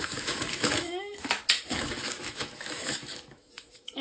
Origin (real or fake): fake